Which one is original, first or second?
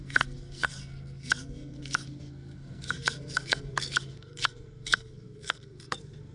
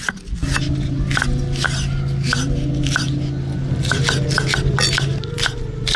second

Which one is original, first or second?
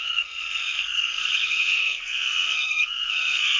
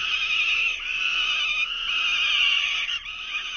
second